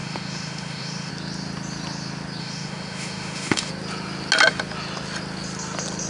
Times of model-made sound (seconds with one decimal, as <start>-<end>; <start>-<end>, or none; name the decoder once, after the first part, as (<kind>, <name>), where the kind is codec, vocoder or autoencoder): 0.0-1.1 (autoencoder, DAC-VAE); 2.4-3.7